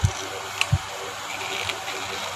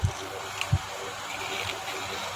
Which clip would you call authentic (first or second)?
first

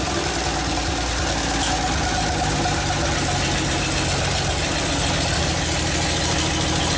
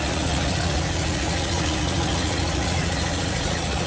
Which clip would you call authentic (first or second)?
first